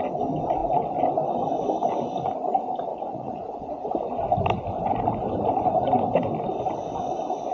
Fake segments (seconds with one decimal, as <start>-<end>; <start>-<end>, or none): 2.9-3.9